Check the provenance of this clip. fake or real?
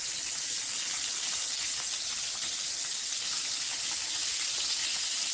real